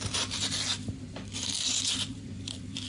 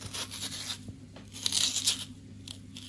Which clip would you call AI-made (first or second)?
first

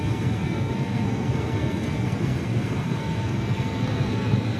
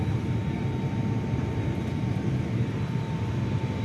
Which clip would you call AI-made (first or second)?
first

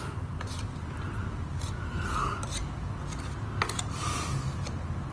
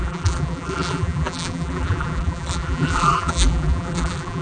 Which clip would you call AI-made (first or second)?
second